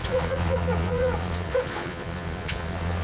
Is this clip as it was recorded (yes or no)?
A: no